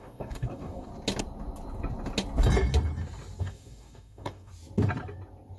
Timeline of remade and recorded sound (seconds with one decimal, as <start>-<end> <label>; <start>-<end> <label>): 0.0-0.9 remade; 0.9-3.4 recorded; 3.4-4.5 remade; 4.5-5.6 recorded